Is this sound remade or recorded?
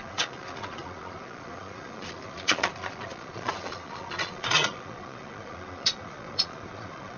remade